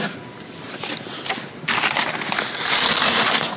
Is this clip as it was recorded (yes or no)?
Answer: yes